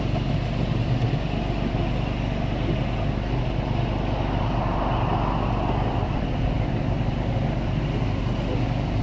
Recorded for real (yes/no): yes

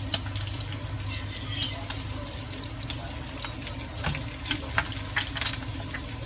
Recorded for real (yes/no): yes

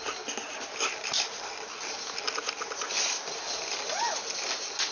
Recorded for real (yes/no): yes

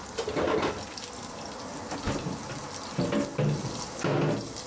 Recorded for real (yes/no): yes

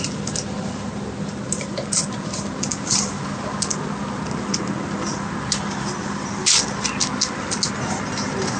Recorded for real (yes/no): yes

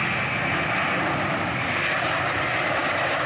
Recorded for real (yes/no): yes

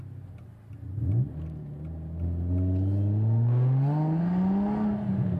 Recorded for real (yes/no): yes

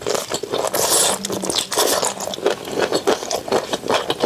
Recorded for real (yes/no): yes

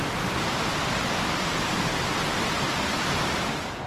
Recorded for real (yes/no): yes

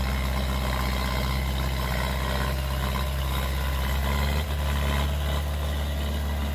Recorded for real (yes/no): yes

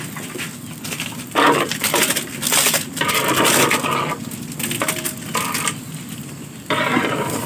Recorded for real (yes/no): yes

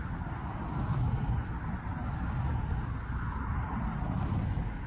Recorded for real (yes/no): yes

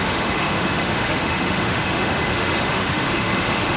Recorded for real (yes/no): no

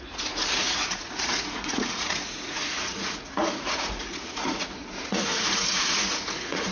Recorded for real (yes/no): no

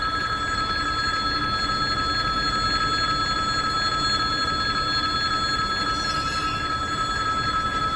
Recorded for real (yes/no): yes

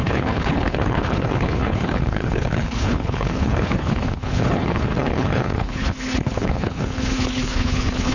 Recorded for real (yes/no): no